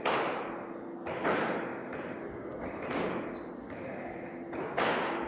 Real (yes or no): yes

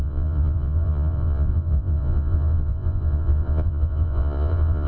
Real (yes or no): no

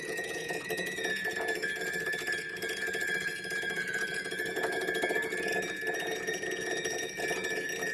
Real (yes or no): no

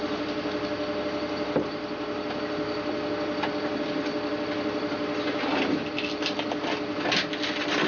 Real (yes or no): yes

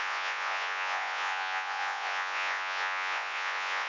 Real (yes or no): no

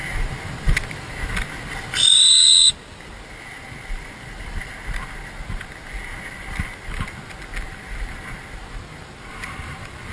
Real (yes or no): yes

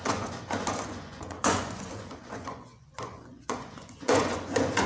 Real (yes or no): no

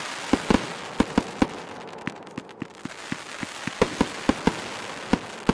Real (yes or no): yes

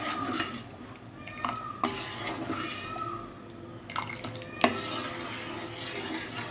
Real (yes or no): yes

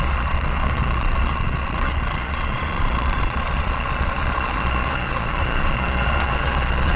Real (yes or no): no